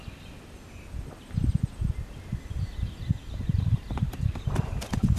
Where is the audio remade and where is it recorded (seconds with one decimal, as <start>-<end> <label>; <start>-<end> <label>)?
0.0-3.1 recorded; 3.1-5.2 remade